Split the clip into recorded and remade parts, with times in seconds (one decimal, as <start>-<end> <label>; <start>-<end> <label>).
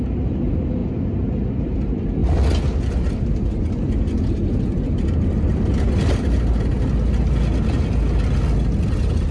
0.0-0.8 remade; 0.8-1.5 recorded; 1.5-2.2 remade; 2.2-2.9 recorded; 2.9-6.7 remade; 6.7-8.9 recorded; 8.9-9.3 remade